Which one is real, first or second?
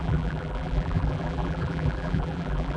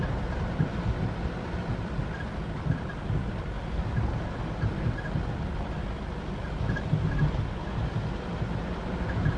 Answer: second